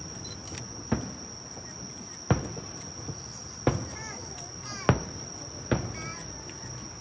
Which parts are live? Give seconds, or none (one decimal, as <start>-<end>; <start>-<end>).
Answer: 0.0-7.0